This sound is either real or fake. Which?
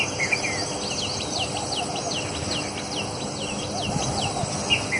real